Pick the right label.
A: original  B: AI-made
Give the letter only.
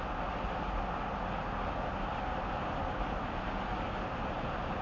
A